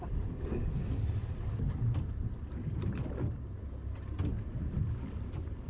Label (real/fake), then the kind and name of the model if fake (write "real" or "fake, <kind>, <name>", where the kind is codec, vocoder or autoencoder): real